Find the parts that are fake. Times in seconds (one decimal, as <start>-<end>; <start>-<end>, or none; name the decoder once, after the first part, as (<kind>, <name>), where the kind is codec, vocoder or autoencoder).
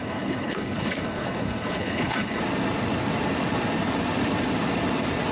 0.0-2.4 (codec, HILCodec)